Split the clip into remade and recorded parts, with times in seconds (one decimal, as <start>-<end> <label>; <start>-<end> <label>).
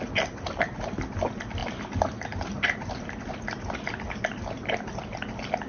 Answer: 0.0-5.7 recorded